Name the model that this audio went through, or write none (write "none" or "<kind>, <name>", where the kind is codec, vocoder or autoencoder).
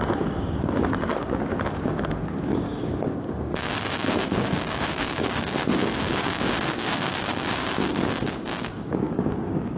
codec, DAC